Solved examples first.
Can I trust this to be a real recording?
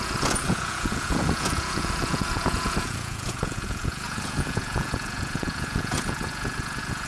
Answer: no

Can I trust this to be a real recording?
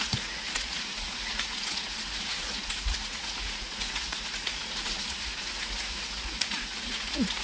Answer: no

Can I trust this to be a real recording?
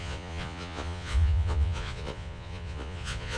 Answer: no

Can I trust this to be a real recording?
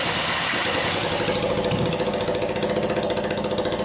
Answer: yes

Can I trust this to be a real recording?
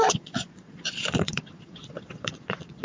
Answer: no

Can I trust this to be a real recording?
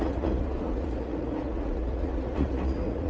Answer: no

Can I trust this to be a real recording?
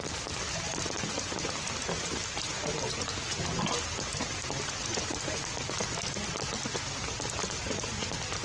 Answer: yes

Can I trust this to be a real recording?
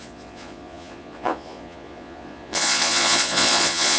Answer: no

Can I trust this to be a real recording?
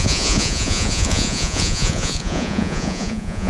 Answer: no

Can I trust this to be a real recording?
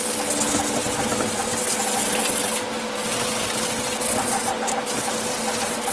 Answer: yes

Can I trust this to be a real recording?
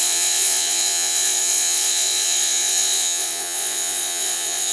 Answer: no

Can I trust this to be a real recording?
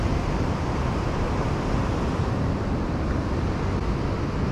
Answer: yes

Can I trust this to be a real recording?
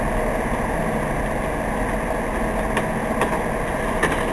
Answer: yes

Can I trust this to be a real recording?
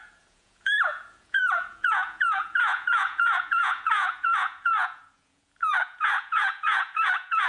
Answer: no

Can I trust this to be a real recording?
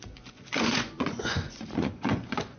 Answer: no